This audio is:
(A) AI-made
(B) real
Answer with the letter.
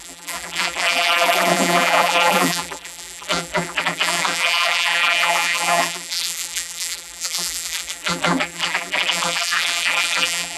A